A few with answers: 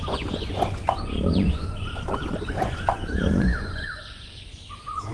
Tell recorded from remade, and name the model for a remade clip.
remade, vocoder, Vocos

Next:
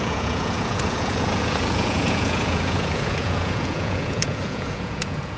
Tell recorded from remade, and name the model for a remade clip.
remade, vocoder, Vocos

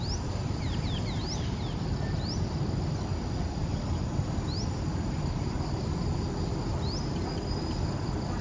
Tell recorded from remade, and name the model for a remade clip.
recorded